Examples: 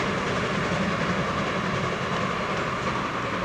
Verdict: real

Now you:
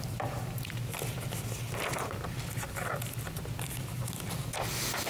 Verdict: real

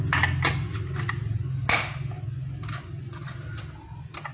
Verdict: real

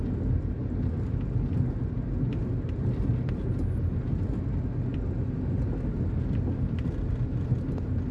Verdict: real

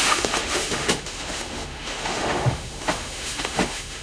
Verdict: fake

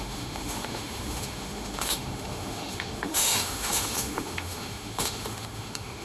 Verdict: fake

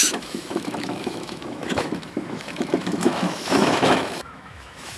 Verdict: fake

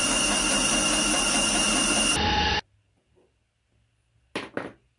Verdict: real